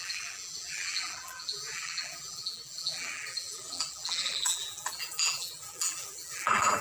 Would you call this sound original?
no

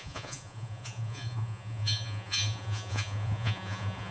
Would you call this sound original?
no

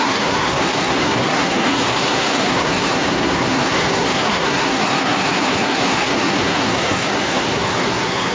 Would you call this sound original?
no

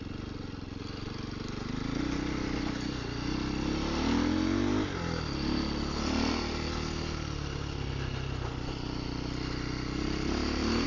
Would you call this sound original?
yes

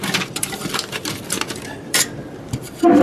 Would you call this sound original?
no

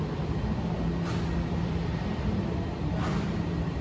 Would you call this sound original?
yes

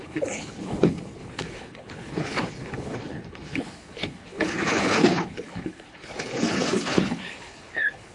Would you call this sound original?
no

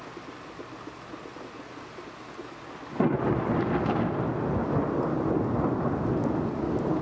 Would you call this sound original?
yes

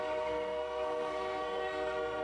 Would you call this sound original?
no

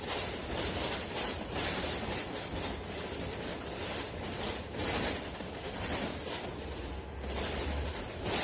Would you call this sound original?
no